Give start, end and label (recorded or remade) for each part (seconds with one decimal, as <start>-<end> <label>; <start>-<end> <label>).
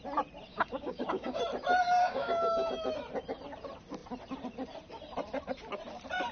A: 0.0-0.5 recorded; 0.5-1.4 remade; 1.4-2.0 recorded; 2.0-2.7 remade; 2.7-6.3 recorded